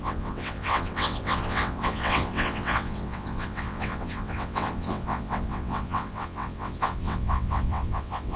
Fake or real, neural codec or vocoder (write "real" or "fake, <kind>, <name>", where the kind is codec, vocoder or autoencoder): fake, vocoder, WaveNeXt